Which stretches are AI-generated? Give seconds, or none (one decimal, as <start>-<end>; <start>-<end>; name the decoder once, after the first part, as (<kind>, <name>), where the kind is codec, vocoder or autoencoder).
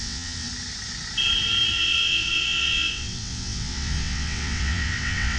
0.0-0.5 (vocoder, WaveNeXt); 1.7-5.4